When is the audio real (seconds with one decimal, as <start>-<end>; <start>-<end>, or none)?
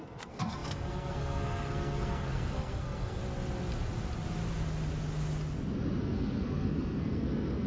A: 3.2-6.0